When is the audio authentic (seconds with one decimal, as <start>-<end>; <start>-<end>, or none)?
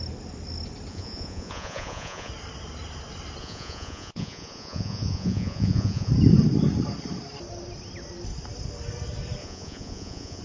0.0-0.9; 2.3-3.4; 6.1-9.4